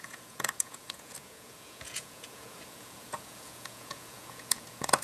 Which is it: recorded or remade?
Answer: remade